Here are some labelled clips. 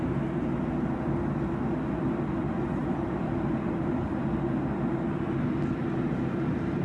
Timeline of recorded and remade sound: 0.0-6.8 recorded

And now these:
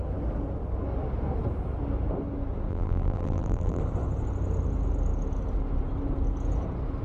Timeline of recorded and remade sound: 0.0-2.7 recorded; 2.7-3.8 remade; 3.8-7.0 recorded

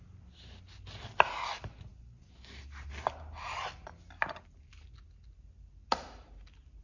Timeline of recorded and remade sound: 0.0-1.9 recorded; 1.9-2.9 remade; 2.9-6.8 recorded

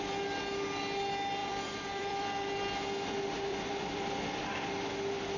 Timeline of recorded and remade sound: 0.0-1.4 recorded; 1.4-2.6 remade; 2.6-3.5 recorded; 3.5-4.1 remade; 4.1-5.4 recorded

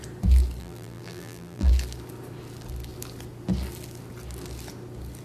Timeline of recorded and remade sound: 0.0-0.6 recorded; 0.6-1.7 remade; 1.7-5.2 recorded